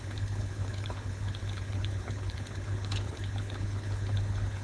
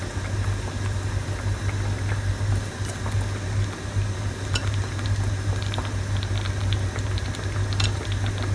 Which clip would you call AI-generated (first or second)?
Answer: first